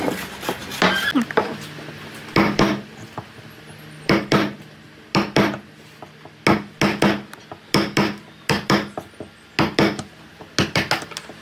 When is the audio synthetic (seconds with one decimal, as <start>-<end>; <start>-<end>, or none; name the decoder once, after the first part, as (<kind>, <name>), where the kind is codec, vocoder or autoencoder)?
none